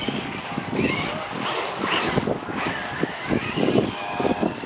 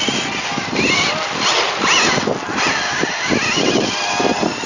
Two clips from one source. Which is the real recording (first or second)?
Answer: second